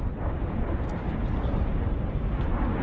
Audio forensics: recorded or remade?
recorded